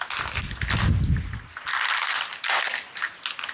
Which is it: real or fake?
real